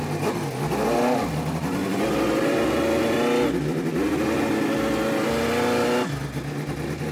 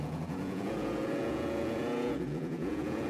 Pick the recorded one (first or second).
first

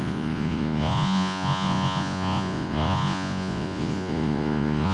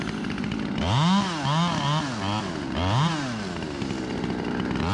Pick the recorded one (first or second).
second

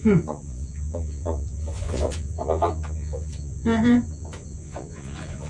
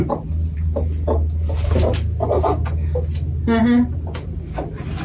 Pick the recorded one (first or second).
second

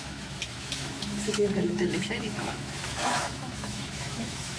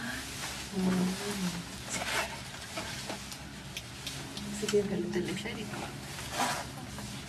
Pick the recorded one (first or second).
second